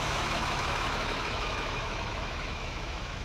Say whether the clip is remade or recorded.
remade